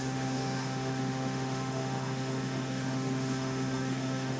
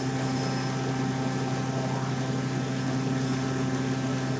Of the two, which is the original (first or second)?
second